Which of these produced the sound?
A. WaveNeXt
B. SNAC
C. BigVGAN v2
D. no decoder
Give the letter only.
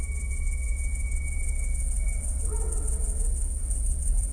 A